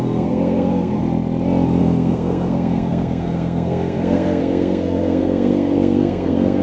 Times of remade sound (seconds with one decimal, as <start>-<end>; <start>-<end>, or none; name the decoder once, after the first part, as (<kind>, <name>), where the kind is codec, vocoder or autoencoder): 0.0-1.0 (codec, SNAC); 1.8-6.6